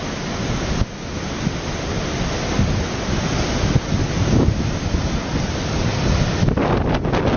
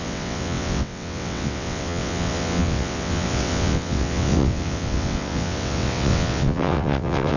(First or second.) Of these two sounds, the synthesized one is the second